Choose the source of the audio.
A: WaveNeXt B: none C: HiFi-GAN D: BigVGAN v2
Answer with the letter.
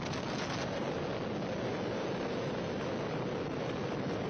B